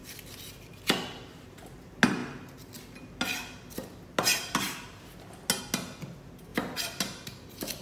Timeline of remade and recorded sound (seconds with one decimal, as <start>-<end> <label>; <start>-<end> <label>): 0.0-7.8 recorded